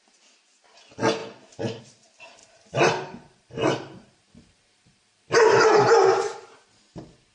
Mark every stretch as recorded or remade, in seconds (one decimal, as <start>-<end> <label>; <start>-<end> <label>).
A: 0.0-2.4 recorded; 2.4-6.8 remade; 6.8-7.3 recorded